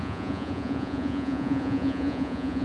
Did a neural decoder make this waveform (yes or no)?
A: yes